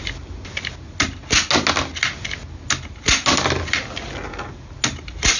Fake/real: real